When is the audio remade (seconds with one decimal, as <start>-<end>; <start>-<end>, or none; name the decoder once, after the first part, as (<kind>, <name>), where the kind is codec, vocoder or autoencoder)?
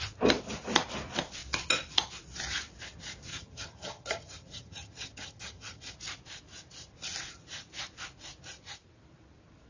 3.3-5.9 (vocoder, HiFi-GAN)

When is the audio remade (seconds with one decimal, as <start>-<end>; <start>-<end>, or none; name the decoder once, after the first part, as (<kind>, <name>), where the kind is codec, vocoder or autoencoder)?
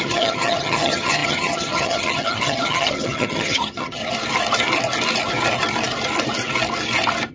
0.0-4.0 (vocoder, HiFi-GAN)